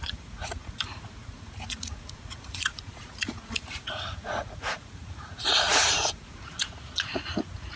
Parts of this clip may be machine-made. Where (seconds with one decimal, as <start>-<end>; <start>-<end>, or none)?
0.0-7.8